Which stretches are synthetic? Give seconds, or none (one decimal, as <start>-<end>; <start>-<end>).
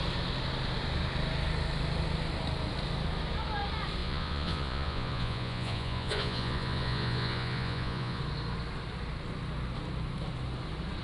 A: 4.0-8.2